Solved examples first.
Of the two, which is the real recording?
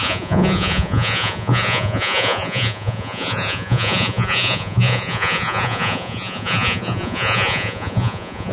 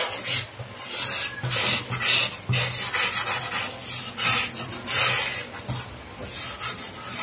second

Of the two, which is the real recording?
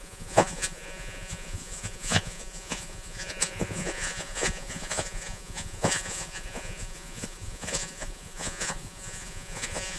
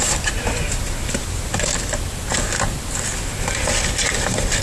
second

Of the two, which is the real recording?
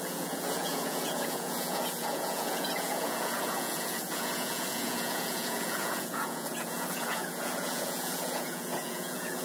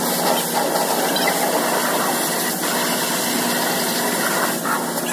second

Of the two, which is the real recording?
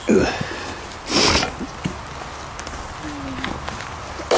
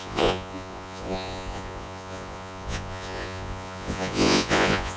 first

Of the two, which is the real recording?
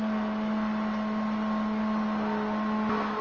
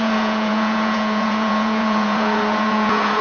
first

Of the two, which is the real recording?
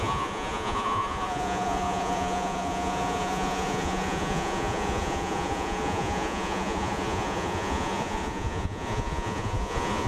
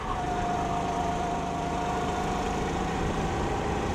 second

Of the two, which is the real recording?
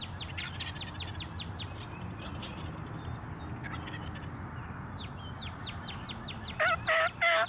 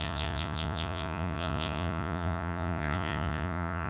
first